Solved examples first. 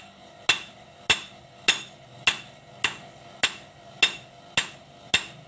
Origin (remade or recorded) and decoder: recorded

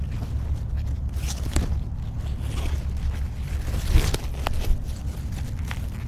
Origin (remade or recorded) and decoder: recorded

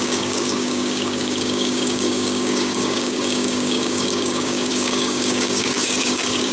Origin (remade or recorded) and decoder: remade, codec, DAC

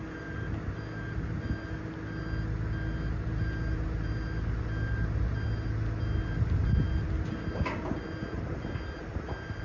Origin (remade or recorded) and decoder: recorded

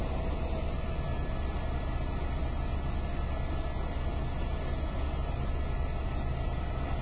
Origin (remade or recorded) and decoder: recorded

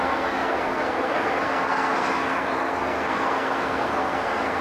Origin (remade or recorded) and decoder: remade, codec, SNAC